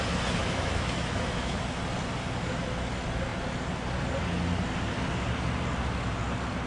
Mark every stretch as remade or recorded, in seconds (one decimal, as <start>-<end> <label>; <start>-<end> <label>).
0.0-0.4 recorded; 0.4-1.6 remade; 1.6-6.7 recorded